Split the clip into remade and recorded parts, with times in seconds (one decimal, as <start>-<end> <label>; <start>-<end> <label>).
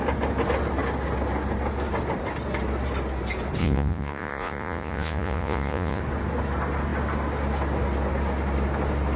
0.0-3.6 recorded; 3.6-6.0 remade; 6.0-9.2 recorded